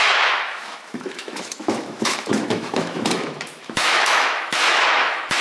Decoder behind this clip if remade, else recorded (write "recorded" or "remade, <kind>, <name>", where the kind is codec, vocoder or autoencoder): remade, autoencoder, DAC-VAE